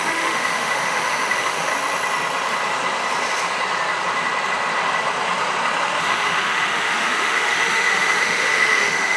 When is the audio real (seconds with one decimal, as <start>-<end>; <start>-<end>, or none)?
1.7-6.0